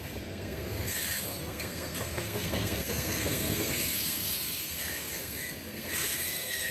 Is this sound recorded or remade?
remade